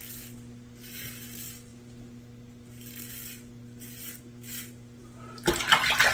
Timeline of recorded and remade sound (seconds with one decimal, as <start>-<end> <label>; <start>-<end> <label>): 0.0-6.1 recorded

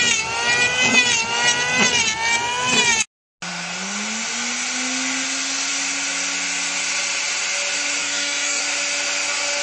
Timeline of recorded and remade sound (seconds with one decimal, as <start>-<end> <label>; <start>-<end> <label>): 0.0-8.0 recorded; 8.0-8.6 remade; 8.6-9.6 recorded

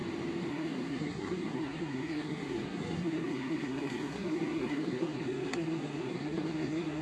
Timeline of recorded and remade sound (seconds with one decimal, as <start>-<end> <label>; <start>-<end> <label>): 0.0-0.5 recorded; 0.5-7.0 remade

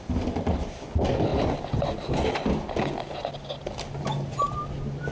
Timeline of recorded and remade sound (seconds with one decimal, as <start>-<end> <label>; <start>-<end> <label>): 0.0-5.1 recorded

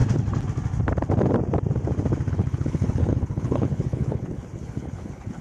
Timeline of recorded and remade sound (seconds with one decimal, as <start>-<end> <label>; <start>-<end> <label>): 0.0-2.3 recorded; 2.3-5.4 remade

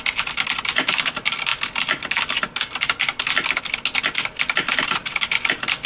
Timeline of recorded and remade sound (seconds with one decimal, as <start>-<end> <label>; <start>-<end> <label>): 0.0-5.9 recorded

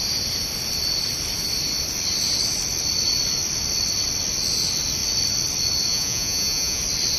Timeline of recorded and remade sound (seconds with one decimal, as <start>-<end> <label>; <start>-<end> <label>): 0.0-5.9 recorded; 5.9-6.8 remade; 6.8-7.2 recorded

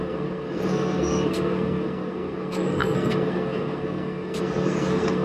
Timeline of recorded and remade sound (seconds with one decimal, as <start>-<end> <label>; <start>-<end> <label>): 0.0-5.2 remade